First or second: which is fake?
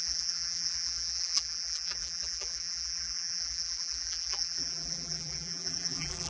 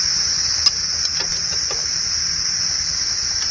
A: first